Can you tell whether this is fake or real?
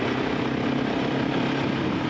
real